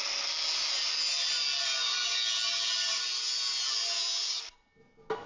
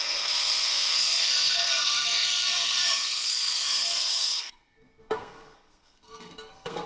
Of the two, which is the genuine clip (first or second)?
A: first